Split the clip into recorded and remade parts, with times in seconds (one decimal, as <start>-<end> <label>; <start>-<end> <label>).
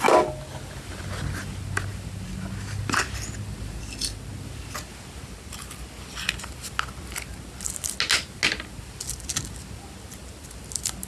0.0-11.1 recorded